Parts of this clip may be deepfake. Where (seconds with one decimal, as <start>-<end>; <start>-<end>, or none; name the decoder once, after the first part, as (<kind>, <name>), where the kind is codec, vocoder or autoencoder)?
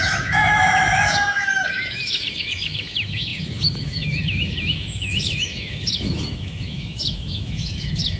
0.0-8.2 (autoencoder, DAC-VAE)